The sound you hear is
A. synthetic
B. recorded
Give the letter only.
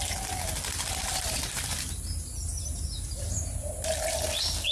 B